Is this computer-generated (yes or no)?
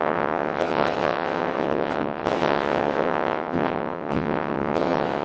yes